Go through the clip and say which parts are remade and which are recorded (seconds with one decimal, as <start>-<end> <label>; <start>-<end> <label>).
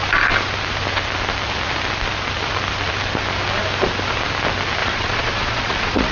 0.0-4.8 recorded; 4.8-6.1 remade